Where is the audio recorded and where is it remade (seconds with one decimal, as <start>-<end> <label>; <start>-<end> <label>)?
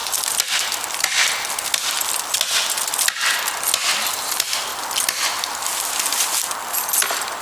0.0-7.4 recorded